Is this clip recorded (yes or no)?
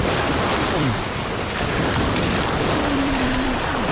no